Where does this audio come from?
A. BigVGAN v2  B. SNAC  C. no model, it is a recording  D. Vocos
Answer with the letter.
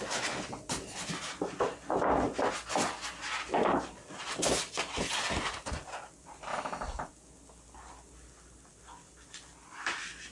C